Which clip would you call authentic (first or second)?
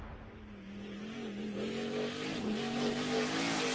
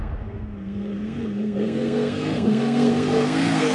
first